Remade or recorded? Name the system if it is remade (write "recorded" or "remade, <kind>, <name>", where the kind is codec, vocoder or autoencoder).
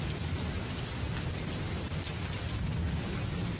recorded